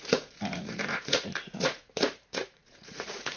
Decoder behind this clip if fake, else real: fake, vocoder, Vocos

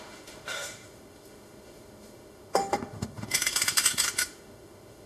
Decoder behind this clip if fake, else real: fake, autoencoder, DAC-VAE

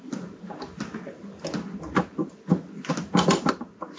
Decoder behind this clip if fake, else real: real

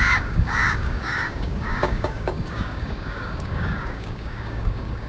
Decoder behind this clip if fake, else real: fake, codec, DAC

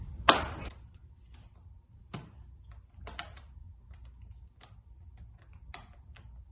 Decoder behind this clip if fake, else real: real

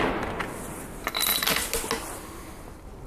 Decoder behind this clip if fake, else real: real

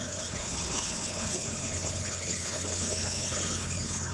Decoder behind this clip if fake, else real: fake, codec, HILCodec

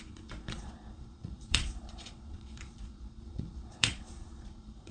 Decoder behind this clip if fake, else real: fake, vocoder, Vocos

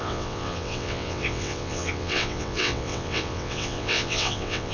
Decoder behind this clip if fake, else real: fake, vocoder, WaveNeXt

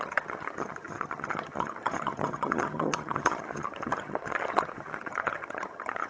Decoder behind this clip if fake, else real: fake, vocoder, HiFi-GAN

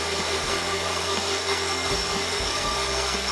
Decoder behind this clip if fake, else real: fake, codec, SNAC